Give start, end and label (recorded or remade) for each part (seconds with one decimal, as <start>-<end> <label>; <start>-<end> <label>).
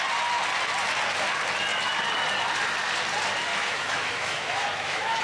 0.0-3.5 recorded; 3.5-5.2 remade